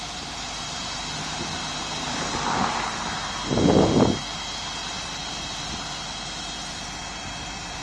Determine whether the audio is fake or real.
real